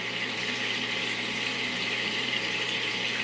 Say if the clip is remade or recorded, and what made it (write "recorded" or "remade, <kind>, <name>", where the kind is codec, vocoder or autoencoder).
remade, vocoder, BigVGAN v2